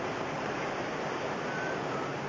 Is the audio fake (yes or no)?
yes